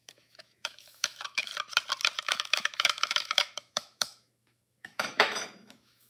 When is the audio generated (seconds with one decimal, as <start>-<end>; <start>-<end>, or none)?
0.0-1.5; 2.2-6.1

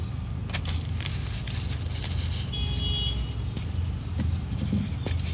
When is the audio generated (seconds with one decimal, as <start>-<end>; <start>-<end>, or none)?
none

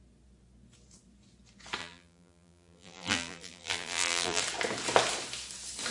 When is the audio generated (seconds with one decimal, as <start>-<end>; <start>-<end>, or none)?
1.8-4.4

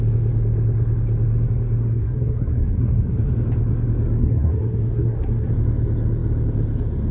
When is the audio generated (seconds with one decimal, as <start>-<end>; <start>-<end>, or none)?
1.8-3.3; 4.2-5.5

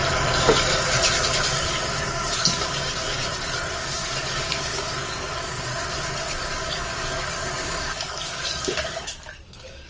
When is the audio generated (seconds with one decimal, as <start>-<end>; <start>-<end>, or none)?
1.2-3.2; 3.8-5.7; 6.4-9.9

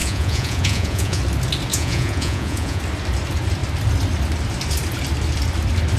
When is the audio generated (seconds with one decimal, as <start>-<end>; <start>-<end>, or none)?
0.0-1.2; 1.7-2.8

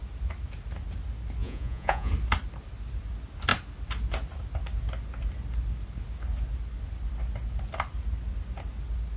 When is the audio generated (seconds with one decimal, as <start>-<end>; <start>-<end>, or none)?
1.4-2.1